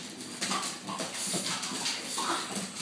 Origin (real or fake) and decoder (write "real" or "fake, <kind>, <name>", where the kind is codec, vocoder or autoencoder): real